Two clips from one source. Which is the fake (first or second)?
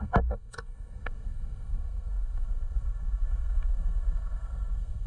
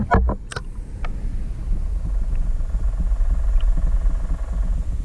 first